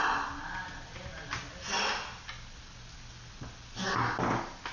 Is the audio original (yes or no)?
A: yes